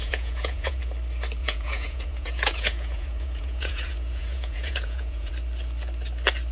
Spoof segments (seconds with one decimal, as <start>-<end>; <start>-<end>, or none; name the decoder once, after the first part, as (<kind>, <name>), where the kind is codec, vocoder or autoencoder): 0.0-0.8 (vocoder, Vocos); 1.4-5.3